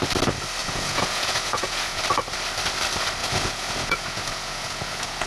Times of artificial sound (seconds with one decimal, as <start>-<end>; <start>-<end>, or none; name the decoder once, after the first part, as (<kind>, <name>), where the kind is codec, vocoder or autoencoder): 0.6-2.0 (vocoder, Vocos); 3.2-5.3